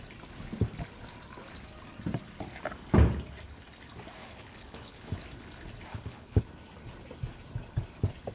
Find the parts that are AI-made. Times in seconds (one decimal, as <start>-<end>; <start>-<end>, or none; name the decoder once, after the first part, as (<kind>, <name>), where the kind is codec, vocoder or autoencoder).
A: 4.2-5.1 (codec, HILCodec); 5.9-6.4